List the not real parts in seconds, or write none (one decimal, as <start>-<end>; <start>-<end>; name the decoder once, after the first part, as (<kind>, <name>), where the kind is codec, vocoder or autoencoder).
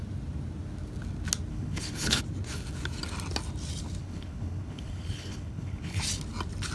1.5-2.2 (codec, HILCodec); 4.0-6.0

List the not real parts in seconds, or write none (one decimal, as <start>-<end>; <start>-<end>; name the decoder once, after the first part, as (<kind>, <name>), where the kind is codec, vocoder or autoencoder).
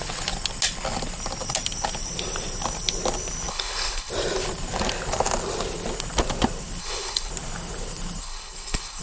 3.5-4.1 (codec, HILCodec); 6.8-7.3; 8.2-9.0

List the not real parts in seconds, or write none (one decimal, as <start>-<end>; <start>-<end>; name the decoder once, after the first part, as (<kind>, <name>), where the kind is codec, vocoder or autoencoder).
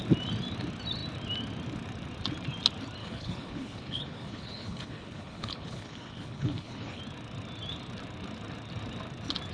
3.0-7.0 (codec, HILCodec)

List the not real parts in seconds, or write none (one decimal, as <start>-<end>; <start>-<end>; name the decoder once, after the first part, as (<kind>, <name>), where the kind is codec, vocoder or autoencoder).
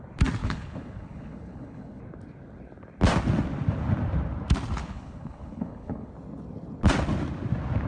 0.4-2.0 (codec, HILCodec); 4.8-6.1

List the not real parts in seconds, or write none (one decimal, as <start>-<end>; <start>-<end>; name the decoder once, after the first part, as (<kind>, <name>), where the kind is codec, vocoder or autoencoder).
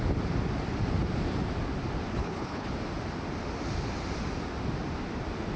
2.1-2.7 (codec, HILCodec)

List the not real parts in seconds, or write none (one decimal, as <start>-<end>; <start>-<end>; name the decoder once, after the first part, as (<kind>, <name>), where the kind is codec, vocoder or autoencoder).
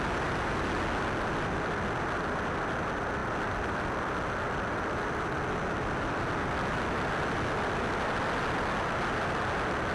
none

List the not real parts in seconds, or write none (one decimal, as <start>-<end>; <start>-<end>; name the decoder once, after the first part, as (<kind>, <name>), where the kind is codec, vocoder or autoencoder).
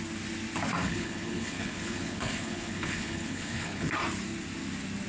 0.8-3.9 (codec, HILCodec)